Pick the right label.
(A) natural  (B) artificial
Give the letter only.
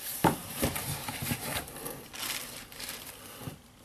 B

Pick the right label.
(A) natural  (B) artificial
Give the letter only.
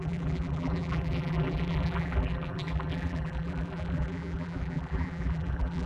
B